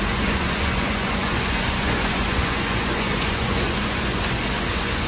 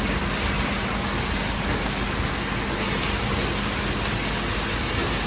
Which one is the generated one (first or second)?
first